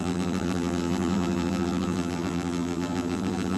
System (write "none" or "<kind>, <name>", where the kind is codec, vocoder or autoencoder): vocoder, BigVGAN v2